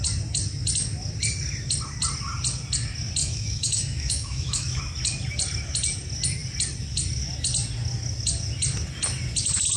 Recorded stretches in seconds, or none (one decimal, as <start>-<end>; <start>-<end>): 0.0-3.2; 4.8-9.8